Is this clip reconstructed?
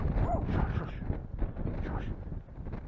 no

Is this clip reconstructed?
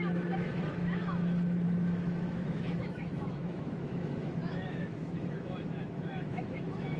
yes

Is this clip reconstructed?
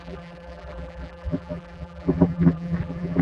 yes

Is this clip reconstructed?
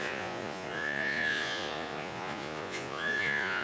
yes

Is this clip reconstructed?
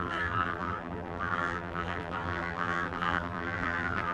yes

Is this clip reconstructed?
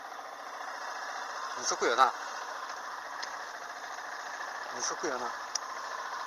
no